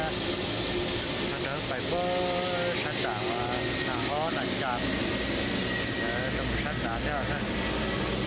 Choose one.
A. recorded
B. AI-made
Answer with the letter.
A